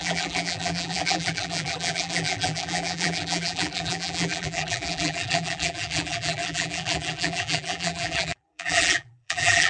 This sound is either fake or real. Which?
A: fake